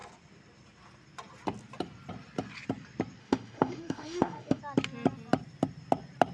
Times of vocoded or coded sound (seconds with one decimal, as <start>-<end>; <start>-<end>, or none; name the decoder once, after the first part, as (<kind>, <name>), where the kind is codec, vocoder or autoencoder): 3.2-4.6 (autoencoder, DAC-VAE)